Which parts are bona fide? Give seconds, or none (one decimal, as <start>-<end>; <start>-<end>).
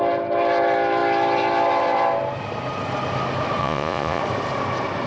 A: 0.0-3.6; 4.2-5.1